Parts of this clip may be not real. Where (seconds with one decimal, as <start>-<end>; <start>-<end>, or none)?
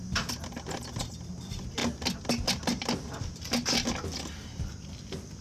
none